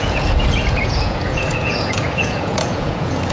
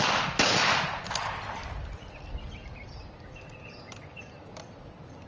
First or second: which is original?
second